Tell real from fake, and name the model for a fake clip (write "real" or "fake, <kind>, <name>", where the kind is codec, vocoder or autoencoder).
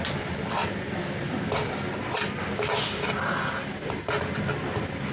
real